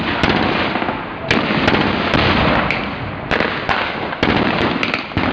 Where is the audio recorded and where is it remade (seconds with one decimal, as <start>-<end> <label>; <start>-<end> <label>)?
0.0-5.3 recorded

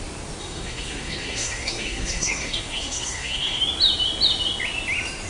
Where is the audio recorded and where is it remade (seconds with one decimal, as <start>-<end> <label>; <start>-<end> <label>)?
0.0-0.4 recorded; 0.4-3.6 remade; 3.6-5.3 recorded